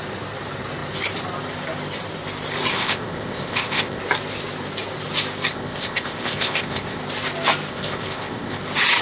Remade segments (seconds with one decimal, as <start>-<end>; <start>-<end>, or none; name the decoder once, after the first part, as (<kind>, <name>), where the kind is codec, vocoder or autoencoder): 2.7-4.0 (codec, ZipCodec); 5.5-7.0; 7.7-8.6